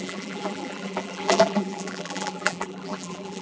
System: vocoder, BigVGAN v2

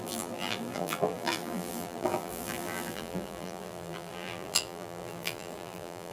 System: vocoder, BigVGAN v2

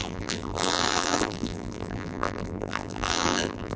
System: vocoder, BigVGAN v2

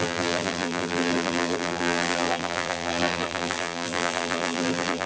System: vocoder, BigVGAN v2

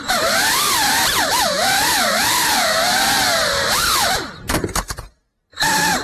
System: vocoder, BigVGAN v2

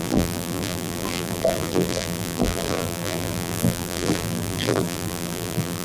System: vocoder, BigVGAN v2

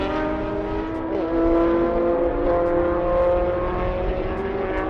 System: none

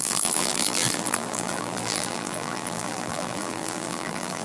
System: vocoder, BigVGAN v2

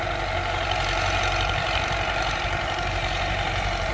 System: vocoder, BigVGAN v2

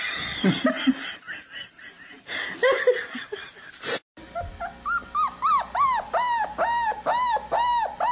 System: none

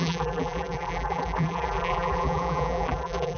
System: vocoder, BigVGAN v2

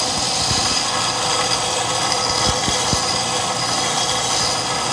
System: none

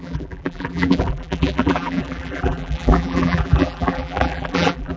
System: vocoder, BigVGAN v2